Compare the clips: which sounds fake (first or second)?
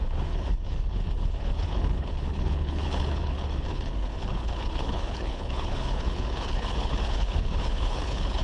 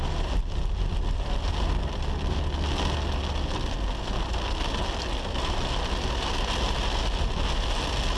first